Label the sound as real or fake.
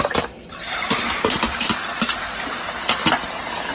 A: real